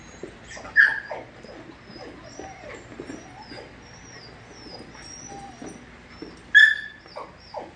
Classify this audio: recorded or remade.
recorded